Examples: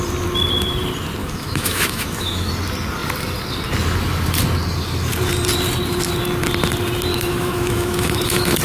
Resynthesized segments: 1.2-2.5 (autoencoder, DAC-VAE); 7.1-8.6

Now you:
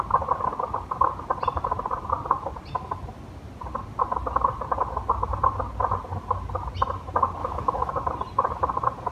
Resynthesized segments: 7.4-7.9 (autoencoder, DAC-VAE)

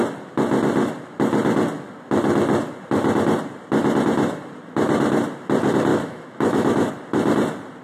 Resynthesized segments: 5.9-6.9 (autoencoder, DAC-VAE)